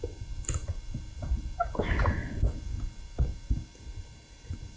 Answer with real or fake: fake